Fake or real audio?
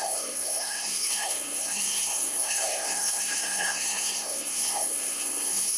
fake